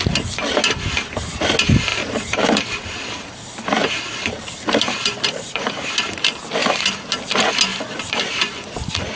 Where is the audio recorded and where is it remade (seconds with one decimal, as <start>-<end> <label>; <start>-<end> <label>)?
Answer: 0.0-1.9 recorded; 1.9-5.9 remade; 5.9-6.6 recorded; 6.6-7.1 remade; 7.1-7.7 recorded; 7.7-8.3 remade; 8.3-9.2 recorded